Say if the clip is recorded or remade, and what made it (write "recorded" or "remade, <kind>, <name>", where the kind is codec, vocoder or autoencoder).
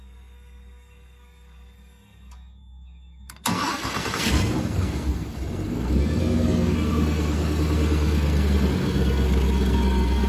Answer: remade, codec, SNAC